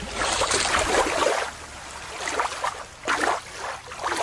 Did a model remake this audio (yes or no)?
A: no